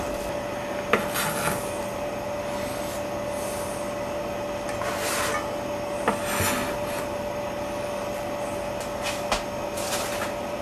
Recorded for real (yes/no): yes